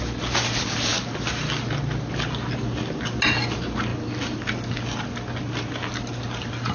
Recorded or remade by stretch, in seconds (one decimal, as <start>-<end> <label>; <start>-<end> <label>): 0.0-6.7 recorded